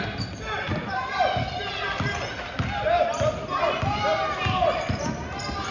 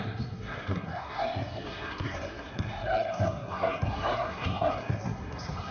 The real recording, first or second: first